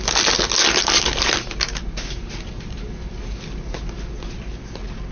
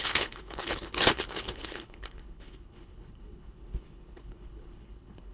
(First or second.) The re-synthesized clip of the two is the second